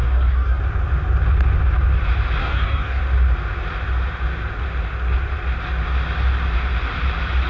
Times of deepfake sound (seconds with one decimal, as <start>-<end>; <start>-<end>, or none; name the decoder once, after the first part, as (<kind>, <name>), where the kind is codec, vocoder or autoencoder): 0.0-0.6 (codec, DAC); 2.4-3.0